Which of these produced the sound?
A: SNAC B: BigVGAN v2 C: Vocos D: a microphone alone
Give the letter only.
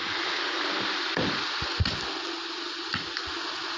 D